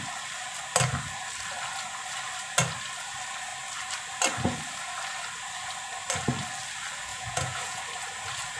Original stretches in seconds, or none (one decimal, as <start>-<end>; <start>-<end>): 0.0-7.1; 7.8-8.6